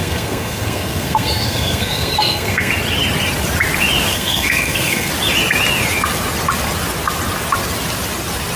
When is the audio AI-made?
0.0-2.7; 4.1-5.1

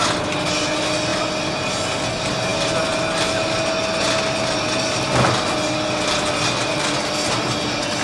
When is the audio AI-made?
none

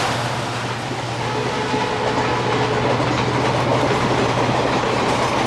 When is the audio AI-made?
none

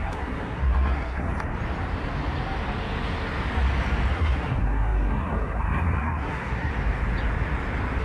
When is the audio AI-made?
0.0-1.3; 4.1-6.7